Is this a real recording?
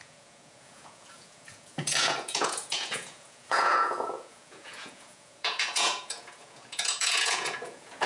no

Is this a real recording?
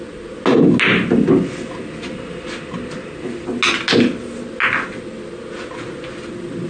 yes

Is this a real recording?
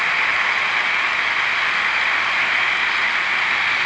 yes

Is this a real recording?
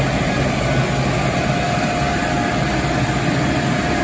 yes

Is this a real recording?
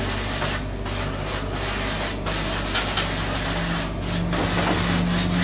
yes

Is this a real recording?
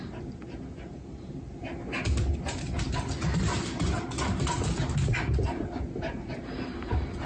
yes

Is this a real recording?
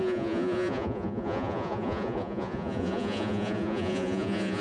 no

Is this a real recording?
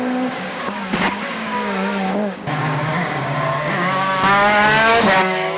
no